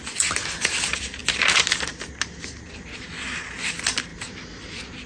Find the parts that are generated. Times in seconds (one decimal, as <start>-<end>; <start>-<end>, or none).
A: none